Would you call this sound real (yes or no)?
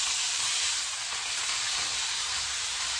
no